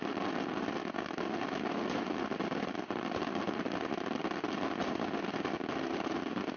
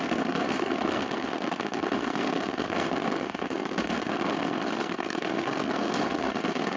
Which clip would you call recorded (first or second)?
first